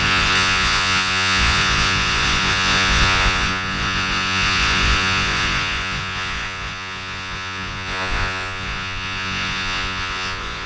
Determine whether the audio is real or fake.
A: fake